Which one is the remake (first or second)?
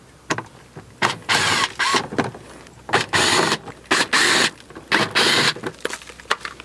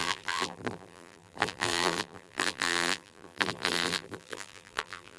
second